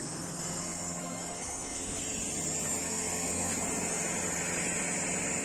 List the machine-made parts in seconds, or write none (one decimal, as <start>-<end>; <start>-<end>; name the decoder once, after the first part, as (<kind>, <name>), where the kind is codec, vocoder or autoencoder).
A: 0.0-2.0 (codec, SNAC); 2.8-3.5

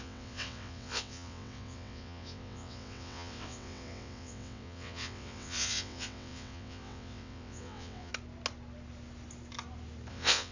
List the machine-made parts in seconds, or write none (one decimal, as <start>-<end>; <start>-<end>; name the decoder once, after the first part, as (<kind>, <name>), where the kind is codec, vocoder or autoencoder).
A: 0.0-8.1 (vocoder, WaveNeXt); 10.1-10.5

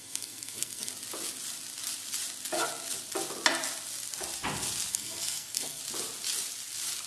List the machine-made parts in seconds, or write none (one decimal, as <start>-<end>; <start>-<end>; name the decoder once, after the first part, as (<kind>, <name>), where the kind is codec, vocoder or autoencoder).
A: 0.0-0.9 (codec, SNAC); 4.9-5.8

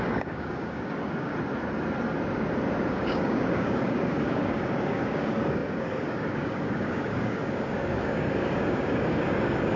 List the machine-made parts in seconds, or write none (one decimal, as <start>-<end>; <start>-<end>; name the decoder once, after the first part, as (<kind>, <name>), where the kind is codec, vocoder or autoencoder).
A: 0.0-1.3 (codec, DAC); 2.9-9.8